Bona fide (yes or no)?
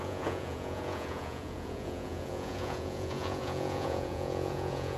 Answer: no